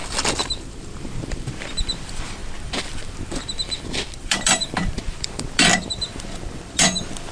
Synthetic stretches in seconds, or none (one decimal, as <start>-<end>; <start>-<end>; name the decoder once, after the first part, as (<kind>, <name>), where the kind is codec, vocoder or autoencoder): 0.6-2.4 (vocoder, BigVGAN v2); 4.2-7.3